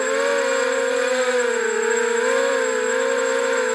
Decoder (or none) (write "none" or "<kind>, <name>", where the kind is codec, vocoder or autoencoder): vocoder, BigVGAN v2